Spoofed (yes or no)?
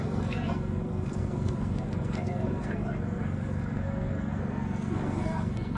yes